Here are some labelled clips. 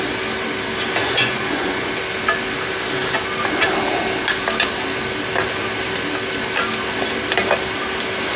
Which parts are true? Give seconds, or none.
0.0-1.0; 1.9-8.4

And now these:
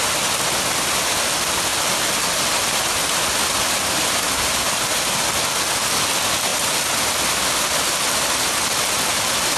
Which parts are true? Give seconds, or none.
0.0-9.6

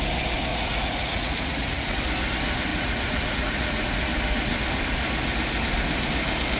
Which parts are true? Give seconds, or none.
0.0-0.5; 2.0-2.7; 3.9-6.6

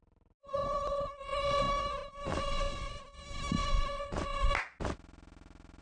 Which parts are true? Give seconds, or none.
0.0-0.4; 1.6-2.3; 3.0-3.6; 4.5-5.8

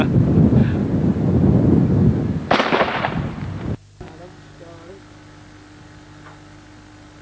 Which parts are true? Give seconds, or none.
0.0-7.2

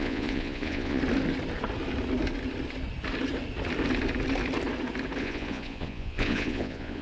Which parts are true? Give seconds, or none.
1.0-5.2

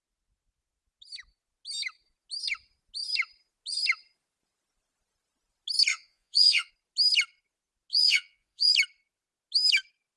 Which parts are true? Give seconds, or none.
0.0-5.9; 6.7-7.9; 8.7-10.2